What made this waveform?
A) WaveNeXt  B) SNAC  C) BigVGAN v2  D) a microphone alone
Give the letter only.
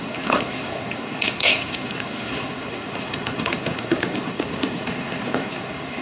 B